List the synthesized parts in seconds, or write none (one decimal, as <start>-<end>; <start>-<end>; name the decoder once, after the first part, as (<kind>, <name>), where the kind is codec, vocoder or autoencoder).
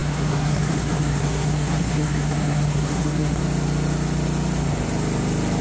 0.0-3.4 (codec, SNAC)